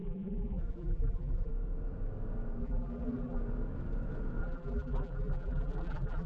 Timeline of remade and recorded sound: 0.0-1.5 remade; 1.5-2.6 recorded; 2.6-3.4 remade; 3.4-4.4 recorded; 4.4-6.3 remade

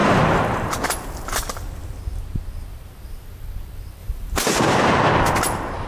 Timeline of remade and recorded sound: 0.0-0.9 remade; 0.9-4.0 recorded; 4.0-4.6 remade; 4.6-5.9 recorded

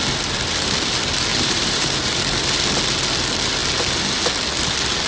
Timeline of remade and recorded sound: 0.0-1.3 recorded; 1.3-2.2 remade; 2.2-5.1 recorded

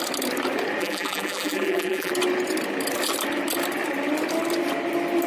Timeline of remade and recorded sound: 0.0-0.8 recorded; 0.8-2.1 remade; 2.1-5.3 recorded

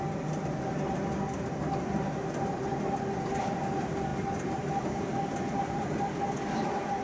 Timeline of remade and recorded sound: 0.0-7.0 recorded

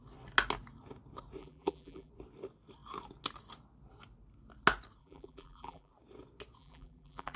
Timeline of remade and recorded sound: 0.0-1.4 recorded; 1.4-2.1 remade; 2.1-5.0 recorded; 5.0-5.9 remade; 5.9-6.6 recorded; 6.6-7.4 remade

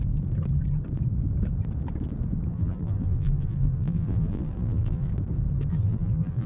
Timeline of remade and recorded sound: 0.0-2.5 recorded; 2.5-5.1 remade; 5.1-5.7 recorded; 5.7-6.5 remade